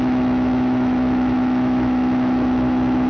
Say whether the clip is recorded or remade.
remade